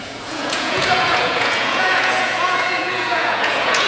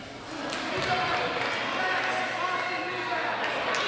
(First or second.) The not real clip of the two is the first